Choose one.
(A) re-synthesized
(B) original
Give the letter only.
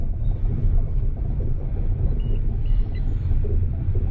A